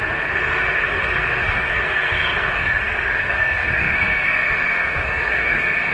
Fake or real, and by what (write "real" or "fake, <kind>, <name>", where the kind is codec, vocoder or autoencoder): fake, codec, SNAC